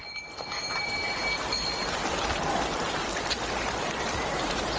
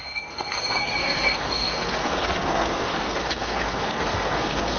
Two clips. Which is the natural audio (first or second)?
first